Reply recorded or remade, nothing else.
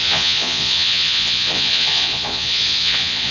remade